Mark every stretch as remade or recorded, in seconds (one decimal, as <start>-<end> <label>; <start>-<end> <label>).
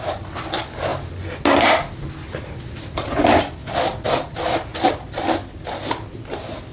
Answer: 0.0-6.7 recorded